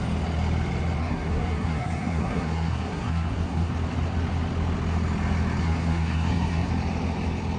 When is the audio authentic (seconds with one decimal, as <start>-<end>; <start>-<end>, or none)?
0.0-1.0; 3.7-5.6; 6.7-7.6